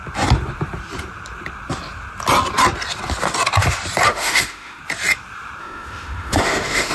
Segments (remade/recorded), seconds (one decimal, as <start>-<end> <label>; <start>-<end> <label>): 0.0-4.1 recorded; 4.1-4.8 remade; 4.8-5.6 recorded; 5.6-6.9 remade